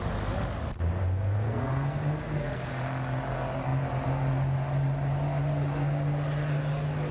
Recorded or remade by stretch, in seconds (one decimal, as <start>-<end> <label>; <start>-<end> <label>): 0.0-1.0 recorded; 1.0-2.7 remade; 2.7-7.1 recorded